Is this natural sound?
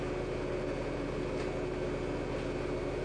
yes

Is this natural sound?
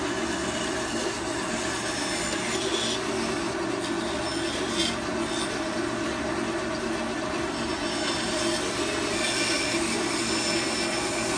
yes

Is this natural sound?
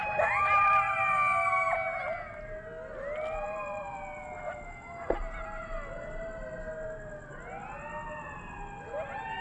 yes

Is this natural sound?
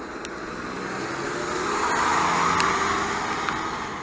yes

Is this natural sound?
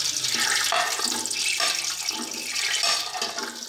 yes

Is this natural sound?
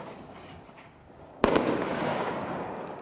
no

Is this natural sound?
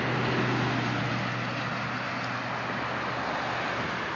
yes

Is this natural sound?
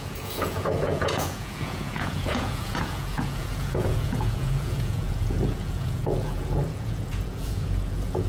no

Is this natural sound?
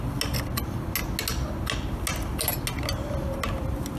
yes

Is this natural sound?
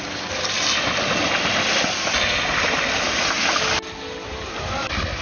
yes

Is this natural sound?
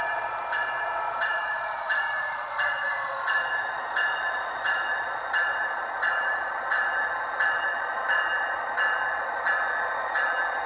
no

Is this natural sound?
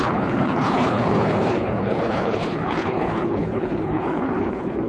no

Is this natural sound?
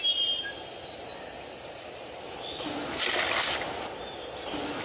yes